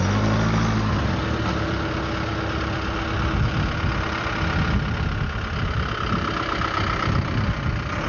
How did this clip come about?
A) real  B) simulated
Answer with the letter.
A